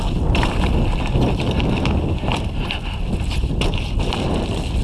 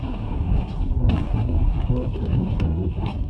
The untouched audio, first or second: first